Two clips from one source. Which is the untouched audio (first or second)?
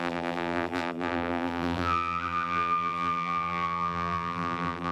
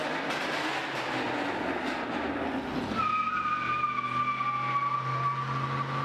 second